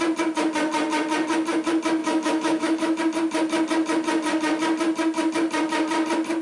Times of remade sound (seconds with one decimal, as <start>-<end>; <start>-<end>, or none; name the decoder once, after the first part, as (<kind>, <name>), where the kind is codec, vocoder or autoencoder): 2.0-3.0 (autoencoder, DAC-VAE)